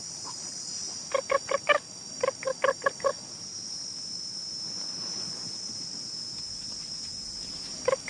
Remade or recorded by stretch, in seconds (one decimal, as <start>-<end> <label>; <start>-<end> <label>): 0.0-8.1 recorded

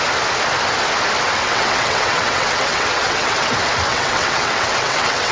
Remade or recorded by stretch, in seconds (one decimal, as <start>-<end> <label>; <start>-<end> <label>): 0.0-1.4 recorded; 1.4-3.5 remade; 3.5-3.9 recorded; 3.9-5.3 remade